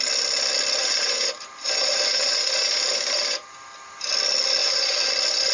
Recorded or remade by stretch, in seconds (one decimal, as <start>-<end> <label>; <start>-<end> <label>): 0.0-0.8 recorded; 0.8-4.1 remade; 4.1-4.6 recorded; 4.6-5.1 remade; 5.1-5.5 recorded